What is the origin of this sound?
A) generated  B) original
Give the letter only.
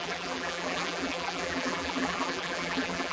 A